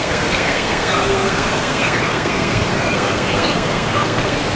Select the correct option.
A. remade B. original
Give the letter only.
A